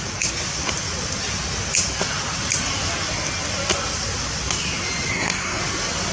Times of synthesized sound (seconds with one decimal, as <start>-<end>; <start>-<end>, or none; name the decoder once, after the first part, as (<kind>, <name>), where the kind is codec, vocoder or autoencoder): 5.1-5.6 (codec, SNAC)